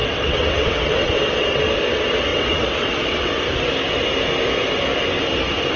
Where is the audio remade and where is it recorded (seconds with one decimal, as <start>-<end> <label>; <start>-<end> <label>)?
0.0-1.6 remade; 1.6-2.3 recorded; 2.3-3.3 remade; 3.3-5.8 recorded